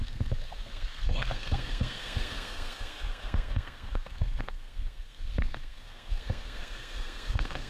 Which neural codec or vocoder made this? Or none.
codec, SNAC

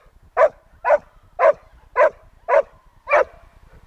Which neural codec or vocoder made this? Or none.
none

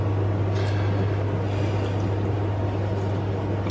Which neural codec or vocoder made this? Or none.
none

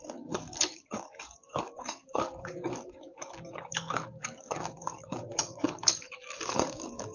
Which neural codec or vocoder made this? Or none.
codec, DAC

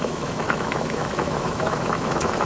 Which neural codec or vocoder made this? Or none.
autoencoder, DAC-VAE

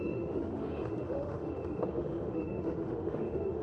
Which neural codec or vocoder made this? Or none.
autoencoder, DAC-VAE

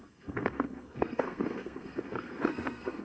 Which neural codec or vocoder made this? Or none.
codec, SNAC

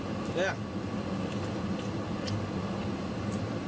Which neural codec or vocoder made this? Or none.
none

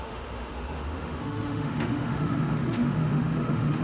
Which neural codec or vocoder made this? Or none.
autoencoder, DAC-VAE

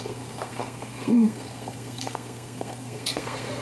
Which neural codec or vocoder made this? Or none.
codec, SNAC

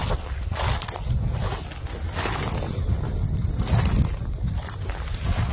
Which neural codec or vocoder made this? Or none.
none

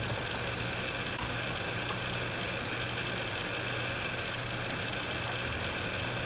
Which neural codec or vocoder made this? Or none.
none